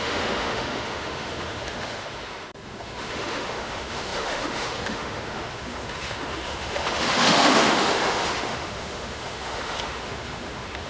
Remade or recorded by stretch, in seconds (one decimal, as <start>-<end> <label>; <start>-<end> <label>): 0.0-10.9 remade